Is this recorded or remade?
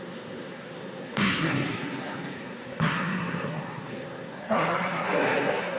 remade